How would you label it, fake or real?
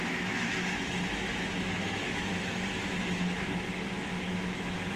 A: fake